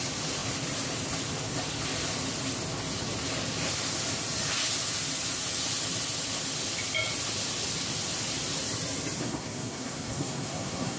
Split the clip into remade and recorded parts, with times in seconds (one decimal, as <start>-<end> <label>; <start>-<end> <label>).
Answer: 0.0-9.2 recorded; 9.2-11.0 remade